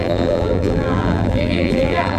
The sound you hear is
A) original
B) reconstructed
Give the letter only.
B